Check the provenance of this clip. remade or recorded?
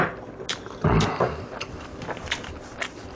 recorded